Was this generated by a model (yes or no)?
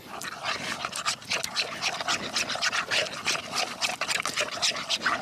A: no